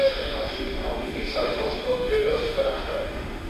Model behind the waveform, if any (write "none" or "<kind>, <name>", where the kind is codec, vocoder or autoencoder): autoencoder, DAC-VAE